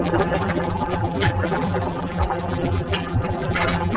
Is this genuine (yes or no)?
no